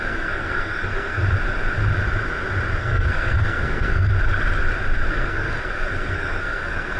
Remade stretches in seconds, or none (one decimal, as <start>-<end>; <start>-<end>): 0.0-1.2; 2.8-4.1; 5.1-7.0